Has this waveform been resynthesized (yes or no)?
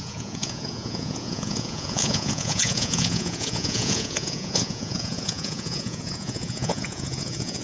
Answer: yes